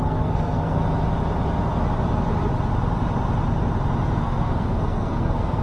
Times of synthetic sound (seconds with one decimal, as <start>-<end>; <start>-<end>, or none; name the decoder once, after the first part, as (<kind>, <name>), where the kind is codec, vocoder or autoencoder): 0.0-0.8 (codec, SNAC); 4.2-5.6